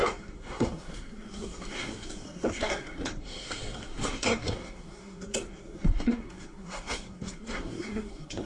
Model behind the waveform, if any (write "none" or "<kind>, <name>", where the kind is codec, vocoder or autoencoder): codec, SNAC